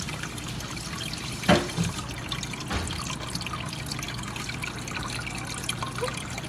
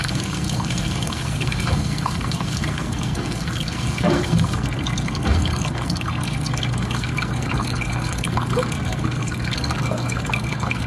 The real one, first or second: first